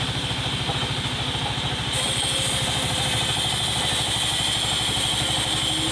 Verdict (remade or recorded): recorded